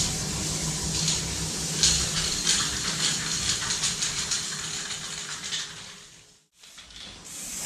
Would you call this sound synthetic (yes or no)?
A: no